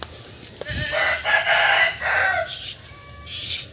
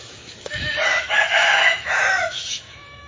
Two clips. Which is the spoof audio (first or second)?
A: second